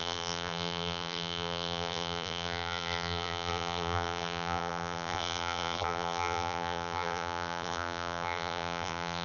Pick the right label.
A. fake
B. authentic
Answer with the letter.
A